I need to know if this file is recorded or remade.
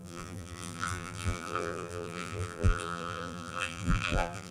remade